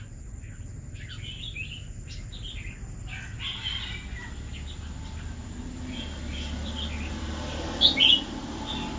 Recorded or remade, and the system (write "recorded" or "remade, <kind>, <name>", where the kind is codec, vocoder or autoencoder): recorded